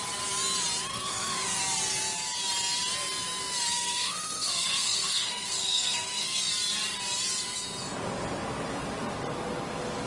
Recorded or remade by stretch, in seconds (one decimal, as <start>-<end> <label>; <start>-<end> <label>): 0.0-0.9 recorded; 0.9-1.6 remade; 1.6-3.7 recorded; 3.7-6.5 remade; 6.5-10.1 recorded